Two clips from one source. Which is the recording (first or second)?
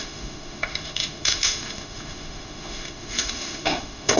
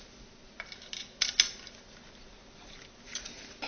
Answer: second